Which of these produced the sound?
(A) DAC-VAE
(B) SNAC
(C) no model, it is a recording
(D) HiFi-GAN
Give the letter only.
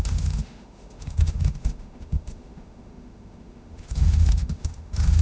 A